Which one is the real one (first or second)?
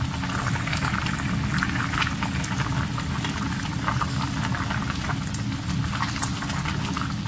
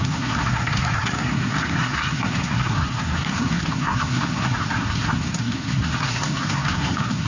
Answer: first